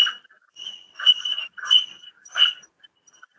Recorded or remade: recorded